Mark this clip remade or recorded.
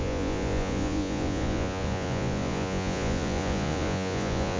remade